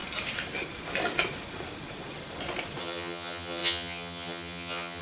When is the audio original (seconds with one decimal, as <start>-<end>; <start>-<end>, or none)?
0.0-2.8